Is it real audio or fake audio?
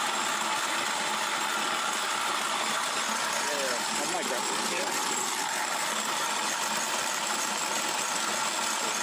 real